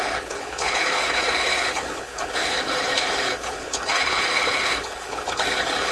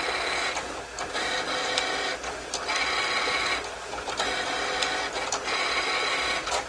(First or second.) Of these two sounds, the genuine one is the second